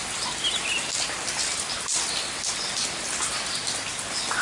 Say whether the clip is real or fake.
real